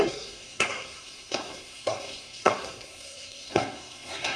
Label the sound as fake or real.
fake